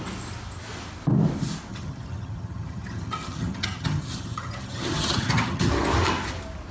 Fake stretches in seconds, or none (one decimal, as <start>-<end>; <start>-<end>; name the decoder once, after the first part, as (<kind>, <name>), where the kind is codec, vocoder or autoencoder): 1.7-5.7 (vocoder, HiFi-GAN)